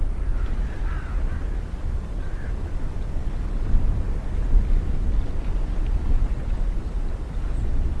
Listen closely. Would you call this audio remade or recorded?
recorded